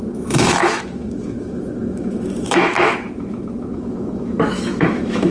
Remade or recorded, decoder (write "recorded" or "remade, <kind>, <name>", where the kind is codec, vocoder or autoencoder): remade, autoencoder, DAC-VAE